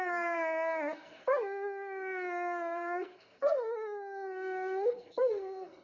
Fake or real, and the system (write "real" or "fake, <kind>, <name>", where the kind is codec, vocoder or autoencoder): fake, codec, SNAC